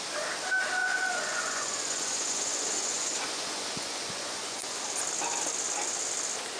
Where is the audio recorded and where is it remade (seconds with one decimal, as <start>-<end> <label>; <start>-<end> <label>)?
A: 0.0-0.8 recorded; 0.8-4.8 remade; 4.8-6.6 recorded